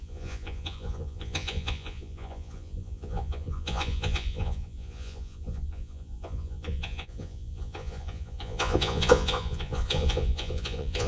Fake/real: fake